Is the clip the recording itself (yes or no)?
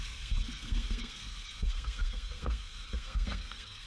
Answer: no